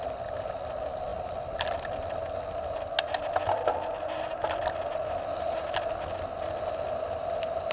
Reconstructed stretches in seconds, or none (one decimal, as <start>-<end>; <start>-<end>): none